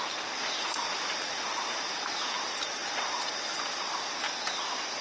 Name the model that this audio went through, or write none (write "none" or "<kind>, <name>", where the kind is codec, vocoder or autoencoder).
none